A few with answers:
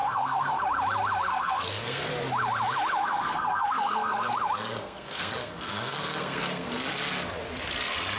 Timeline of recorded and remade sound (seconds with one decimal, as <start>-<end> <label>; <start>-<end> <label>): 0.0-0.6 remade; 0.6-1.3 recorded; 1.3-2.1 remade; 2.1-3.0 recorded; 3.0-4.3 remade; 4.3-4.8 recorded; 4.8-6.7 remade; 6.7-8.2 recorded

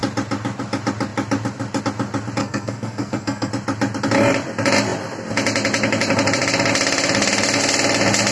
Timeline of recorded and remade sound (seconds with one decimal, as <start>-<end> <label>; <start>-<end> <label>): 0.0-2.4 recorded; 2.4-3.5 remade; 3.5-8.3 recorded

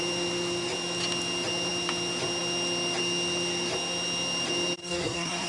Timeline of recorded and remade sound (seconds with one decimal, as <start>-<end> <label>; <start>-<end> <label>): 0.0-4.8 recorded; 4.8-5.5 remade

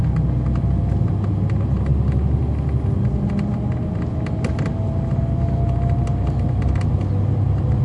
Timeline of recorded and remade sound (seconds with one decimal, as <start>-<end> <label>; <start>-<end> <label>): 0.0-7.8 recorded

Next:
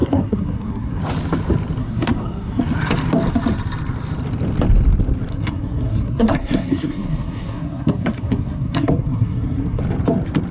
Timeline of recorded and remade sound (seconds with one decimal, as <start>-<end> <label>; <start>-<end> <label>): 0.0-1.0 remade; 1.0-1.8 recorded; 1.8-2.6 remade; 2.6-5.3 recorded; 5.3-9.8 remade; 9.8-10.5 recorded